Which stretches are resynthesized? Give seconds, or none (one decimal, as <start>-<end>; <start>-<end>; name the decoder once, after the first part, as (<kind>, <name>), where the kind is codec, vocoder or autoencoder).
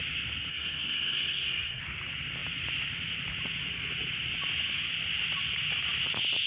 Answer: 0.5-1.8 (codec, SNAC)